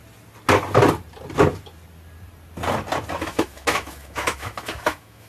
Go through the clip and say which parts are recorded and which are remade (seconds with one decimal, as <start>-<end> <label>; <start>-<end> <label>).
0.0-3.2 recorded; 3.2-5.3 remade